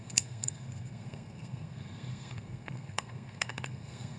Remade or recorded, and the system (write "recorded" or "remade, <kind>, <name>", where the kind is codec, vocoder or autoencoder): remade, codec, SNAC